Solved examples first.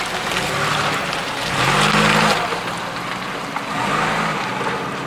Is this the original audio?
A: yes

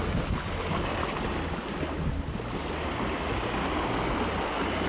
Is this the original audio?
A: yes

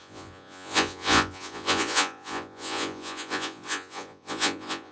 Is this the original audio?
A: no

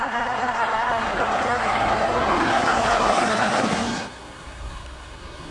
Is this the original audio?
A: no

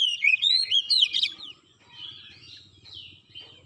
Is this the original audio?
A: no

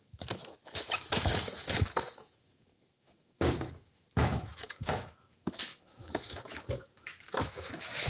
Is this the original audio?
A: no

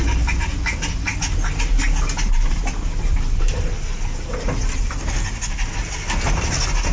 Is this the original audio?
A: yes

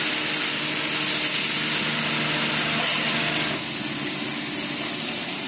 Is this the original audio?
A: yes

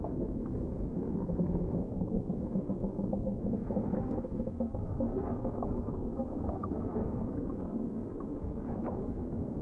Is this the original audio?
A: no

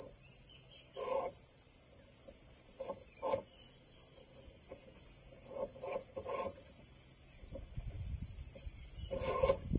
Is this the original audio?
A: yes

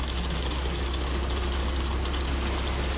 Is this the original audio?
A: yes